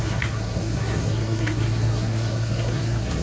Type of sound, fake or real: fake